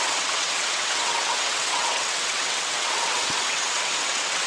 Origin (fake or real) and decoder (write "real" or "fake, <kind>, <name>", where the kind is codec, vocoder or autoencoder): fake, vocoder, WaveNeXt